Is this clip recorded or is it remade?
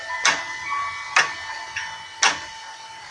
recorded